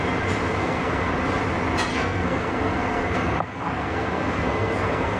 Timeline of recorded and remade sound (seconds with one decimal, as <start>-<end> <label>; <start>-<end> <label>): 0.0-0.6 recorded; 0.6-1.1 remade; 1.1-1.9 recorded; 1.9-5.2 remade